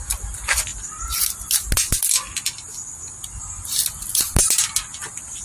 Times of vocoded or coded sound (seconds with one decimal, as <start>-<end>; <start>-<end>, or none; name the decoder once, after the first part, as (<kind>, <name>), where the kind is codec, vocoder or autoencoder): none

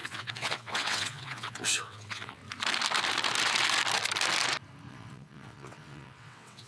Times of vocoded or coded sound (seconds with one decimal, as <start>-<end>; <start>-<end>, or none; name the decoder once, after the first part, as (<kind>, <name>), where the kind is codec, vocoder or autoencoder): 0.0-2.4 (vocoder, WaveNeXt); 4.9-6.7

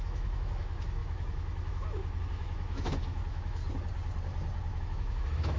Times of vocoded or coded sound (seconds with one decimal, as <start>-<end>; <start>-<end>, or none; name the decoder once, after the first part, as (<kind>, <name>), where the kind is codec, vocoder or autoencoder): 0.0-3.6 (autoencoder, DAC-VAE); 4.8-5.6

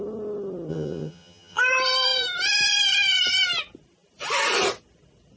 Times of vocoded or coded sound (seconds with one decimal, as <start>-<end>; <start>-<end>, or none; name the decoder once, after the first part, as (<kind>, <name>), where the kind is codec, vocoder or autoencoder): 0.7-1.6 (vocoder, HiFi-GAN)

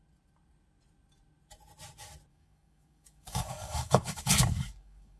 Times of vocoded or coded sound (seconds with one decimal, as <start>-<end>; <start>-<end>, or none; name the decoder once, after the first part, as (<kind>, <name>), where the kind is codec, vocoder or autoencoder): 2.3-5.2 (codec, DAC)

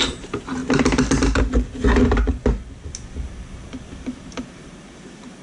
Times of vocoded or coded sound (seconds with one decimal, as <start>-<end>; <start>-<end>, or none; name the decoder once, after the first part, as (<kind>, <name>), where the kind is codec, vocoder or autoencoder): 0.0-0.6 (vocoder, BigVGAN v2); 3.8-5.4